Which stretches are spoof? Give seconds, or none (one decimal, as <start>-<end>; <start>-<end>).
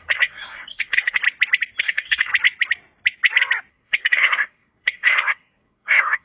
0.0-1.2; 1.8-2.3; 3.7-6.2